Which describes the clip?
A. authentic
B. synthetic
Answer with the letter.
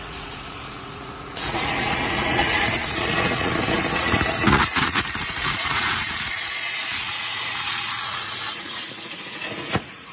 B